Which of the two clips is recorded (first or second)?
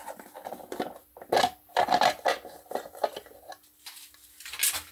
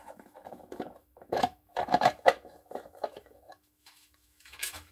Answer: first